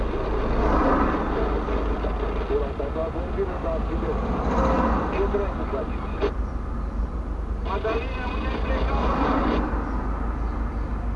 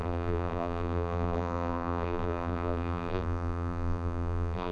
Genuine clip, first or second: first